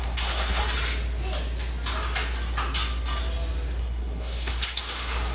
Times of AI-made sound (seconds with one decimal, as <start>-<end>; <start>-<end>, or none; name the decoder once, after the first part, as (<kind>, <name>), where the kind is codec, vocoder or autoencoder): 0.0-0.6 (codec, SNAC); 3.8-5.3